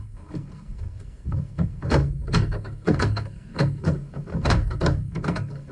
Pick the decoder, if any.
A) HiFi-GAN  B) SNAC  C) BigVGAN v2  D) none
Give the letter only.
B